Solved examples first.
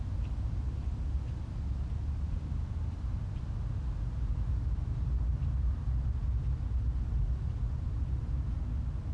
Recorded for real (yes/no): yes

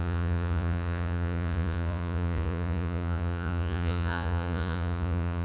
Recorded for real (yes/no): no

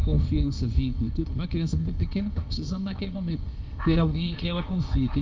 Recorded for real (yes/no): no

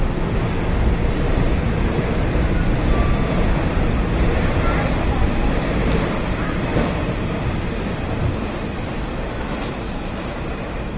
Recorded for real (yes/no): yes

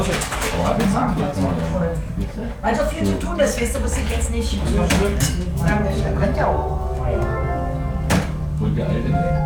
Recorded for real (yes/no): no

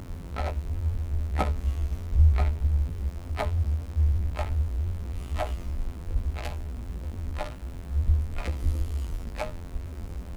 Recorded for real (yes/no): no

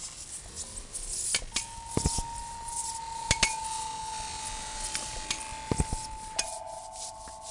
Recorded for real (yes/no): yes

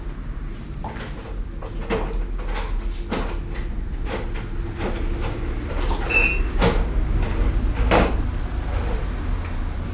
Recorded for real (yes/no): yes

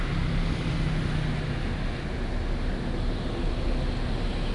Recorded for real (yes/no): yes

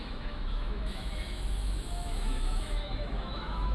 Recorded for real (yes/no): no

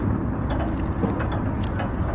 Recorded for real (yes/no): yes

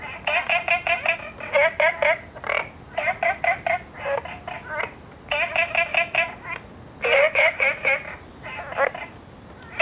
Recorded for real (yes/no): yes